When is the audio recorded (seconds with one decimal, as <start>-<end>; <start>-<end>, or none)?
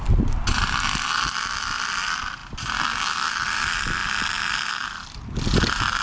0.0-6.0